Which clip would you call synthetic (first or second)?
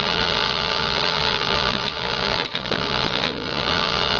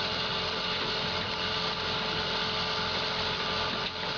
first